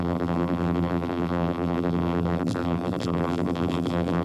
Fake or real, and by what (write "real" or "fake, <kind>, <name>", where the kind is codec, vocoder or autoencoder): fake, vocoder, BigVGAN v2